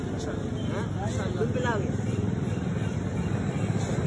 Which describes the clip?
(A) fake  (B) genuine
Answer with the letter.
B